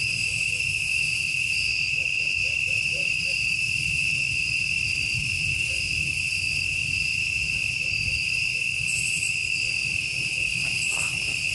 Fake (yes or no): yes